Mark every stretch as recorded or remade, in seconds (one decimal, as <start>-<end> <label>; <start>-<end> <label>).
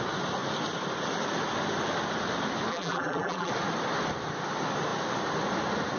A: 0.0-2.7 recorded; 2.7-3.5 remade; 3.5-6.0 recorded